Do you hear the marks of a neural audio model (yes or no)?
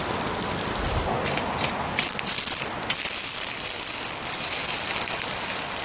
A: no